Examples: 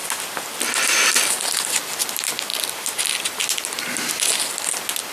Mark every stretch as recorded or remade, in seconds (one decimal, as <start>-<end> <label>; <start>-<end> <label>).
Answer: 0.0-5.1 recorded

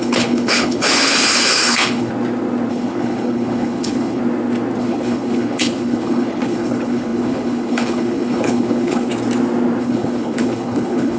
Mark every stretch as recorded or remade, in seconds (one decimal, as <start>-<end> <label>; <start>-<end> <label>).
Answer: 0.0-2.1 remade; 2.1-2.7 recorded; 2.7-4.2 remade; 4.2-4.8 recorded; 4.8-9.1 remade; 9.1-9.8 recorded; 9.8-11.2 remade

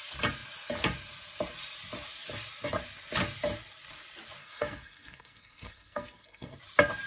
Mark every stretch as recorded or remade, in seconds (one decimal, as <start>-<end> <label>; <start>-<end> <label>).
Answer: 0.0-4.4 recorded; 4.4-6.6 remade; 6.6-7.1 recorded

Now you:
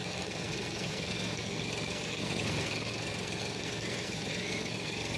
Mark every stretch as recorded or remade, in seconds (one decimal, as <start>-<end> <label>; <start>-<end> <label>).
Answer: 0.0-5.2 remade

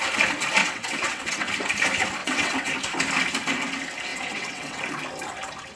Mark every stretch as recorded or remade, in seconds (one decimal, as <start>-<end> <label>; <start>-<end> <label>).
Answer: 0.0-0.6 recorded; 0.6-1.5 remade; 1.5-2.2 recorded; 2.2-2.7 remade; 2.7-4.1 recorded; 4.1-4.8 remade; 4.8-5.8 recorded

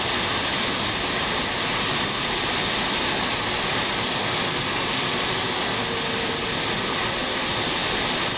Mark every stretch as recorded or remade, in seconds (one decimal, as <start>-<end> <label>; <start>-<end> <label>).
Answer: 0.0-3.7 recorded; 3.7-5.7 remade; 5.7-7.2 recorded; 7.2-7.9 remade; 7.9-8.4 recorded

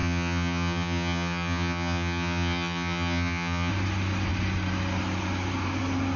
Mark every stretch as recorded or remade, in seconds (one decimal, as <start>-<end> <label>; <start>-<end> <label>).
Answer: 0.0-3.7 remade; 3.7-6.2 recorded

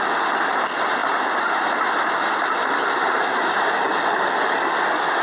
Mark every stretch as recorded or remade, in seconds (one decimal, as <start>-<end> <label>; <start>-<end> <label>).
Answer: 0.0-5.2 recorded